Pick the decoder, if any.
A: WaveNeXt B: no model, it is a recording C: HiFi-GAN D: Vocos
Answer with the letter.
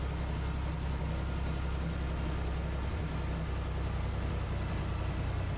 B